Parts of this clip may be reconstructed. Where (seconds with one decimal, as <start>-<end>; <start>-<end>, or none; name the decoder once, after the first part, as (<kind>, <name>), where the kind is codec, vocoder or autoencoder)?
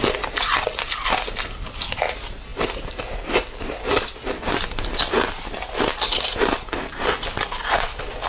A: none